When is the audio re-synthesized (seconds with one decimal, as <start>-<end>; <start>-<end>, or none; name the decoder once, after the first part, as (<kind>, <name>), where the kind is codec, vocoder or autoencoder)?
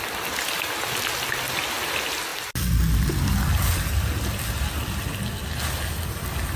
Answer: none